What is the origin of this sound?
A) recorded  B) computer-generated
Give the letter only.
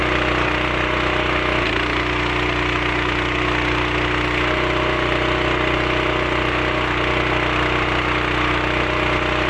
A